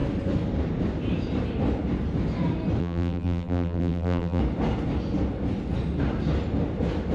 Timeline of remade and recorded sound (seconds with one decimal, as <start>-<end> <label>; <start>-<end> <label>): 0.0-2.8 recorded; 2.8-4.4 remade; 4.4-7.1 recorded